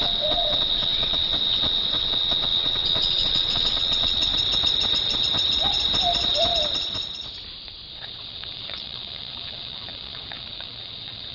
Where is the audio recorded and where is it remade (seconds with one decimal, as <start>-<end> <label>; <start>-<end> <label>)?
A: 0.0-4.3 remade; 4.3-7.9 recorded; 7.9-11.3 remade